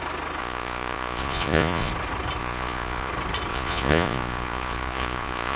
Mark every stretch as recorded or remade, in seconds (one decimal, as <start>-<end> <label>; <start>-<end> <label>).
0.0-0.4 recorded; 0.4-1.9 remade; 1.9-2.4 recorded; 2.4-3.1 remade; 3.1-3.5 recorded; 3.5-5.6 remade